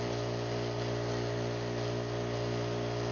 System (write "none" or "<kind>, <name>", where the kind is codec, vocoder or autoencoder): none